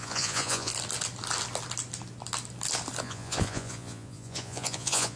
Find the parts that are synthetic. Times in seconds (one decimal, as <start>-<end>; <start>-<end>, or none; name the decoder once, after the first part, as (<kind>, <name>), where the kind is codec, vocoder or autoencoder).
0.0-0.7 (vocoder, Vocos); 3.0-5.2